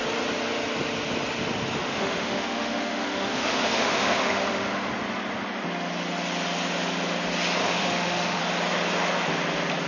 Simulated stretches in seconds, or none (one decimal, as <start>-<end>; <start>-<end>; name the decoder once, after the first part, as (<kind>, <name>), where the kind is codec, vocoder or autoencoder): 1.8-4.9 (autoencoder, DAC-VAE); 7.6-8.4